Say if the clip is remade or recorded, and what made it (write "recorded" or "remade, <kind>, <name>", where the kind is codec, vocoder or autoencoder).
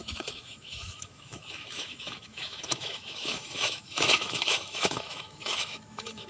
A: remade, autoencoder, DAC-VAE